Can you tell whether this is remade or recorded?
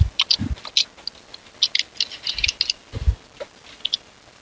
recorded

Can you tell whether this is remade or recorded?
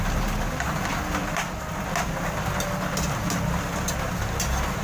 recorded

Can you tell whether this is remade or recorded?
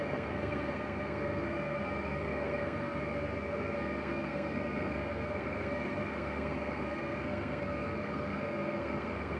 remade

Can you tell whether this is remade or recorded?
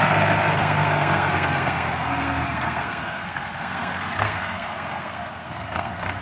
remade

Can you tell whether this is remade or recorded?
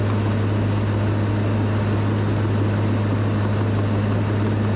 recorded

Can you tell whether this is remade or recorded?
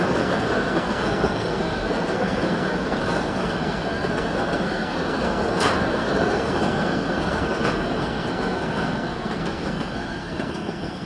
remade